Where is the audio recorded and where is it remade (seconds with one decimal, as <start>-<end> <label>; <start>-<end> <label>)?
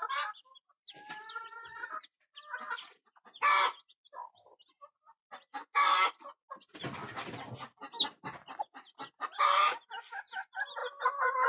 0.0-11.5 recorded